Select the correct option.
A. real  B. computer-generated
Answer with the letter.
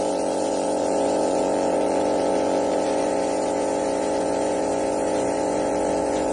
B